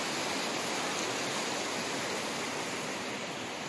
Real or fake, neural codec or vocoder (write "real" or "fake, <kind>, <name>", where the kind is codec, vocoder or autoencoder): real